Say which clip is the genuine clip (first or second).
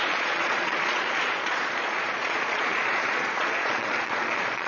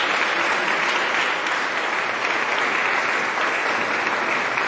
second